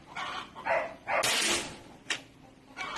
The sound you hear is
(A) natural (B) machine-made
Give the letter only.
A